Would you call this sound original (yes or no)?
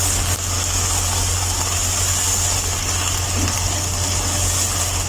yes